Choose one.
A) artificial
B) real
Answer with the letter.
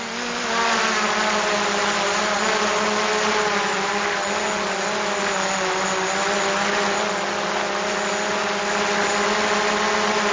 B